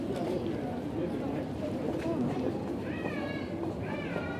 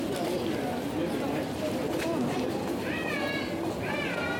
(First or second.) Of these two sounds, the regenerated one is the first